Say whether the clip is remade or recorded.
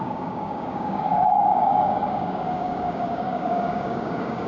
remade